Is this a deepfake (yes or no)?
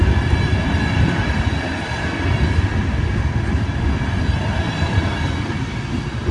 no